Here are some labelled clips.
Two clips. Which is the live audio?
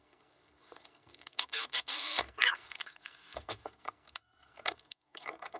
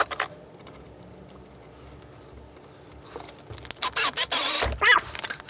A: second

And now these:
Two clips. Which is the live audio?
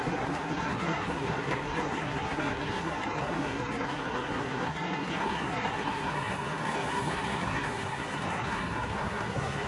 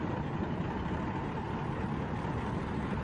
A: second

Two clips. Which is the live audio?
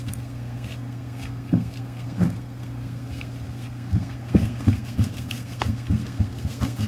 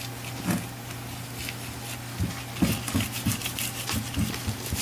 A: second